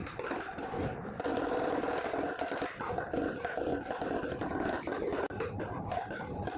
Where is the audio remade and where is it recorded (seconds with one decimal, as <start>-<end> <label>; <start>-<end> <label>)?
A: 0.0-0.9 remade; 0.9-1.3 recorded; 1.3-2.7 remade; 2.7-6.6 recorded